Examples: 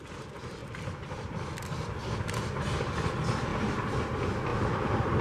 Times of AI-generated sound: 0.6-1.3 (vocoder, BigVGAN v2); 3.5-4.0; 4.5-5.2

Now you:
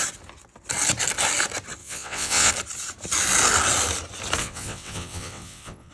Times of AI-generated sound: 1.8-2.5 (vocoder, WaveNeXt); 4.4-5.9

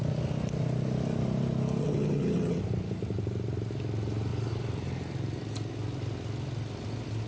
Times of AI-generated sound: 1.8-2.6 (vocoder, HiFi-GAN)

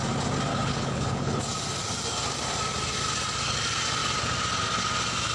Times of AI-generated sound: 0.5-1.4 (codec, HILCodec)

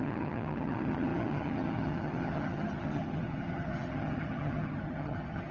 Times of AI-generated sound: 0.0-5.5 (vocoder, HiFi-GAN)

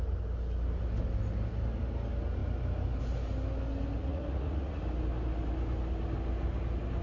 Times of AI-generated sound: 4.0-4.8 (vocoder, Vocos)